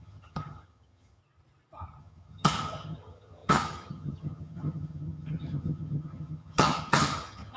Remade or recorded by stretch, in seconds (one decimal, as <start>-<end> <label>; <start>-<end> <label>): 0.0-1.2 remade; 1.2-2.0 recorded; 2.0-7.6 remade